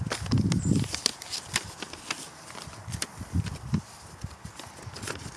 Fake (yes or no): no